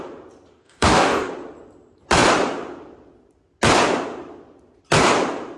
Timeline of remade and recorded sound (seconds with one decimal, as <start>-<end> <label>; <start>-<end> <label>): 0.0-0.6 recorded; 0.6-1.3 remade; 1.3-5.6 recorded